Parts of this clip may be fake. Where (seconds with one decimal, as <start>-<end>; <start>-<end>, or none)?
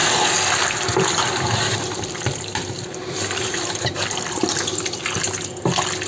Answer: none